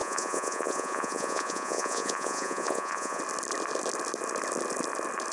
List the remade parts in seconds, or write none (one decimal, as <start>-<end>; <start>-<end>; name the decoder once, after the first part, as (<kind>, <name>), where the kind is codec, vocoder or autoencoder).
0.0-3.2 (vocoder, Vocos)